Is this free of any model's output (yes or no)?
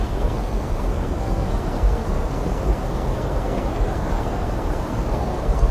no